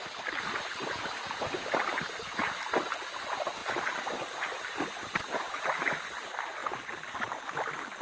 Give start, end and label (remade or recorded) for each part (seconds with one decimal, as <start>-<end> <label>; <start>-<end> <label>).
0.0-8.0 recorded